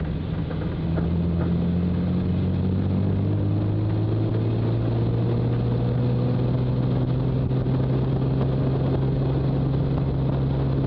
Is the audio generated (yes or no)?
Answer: no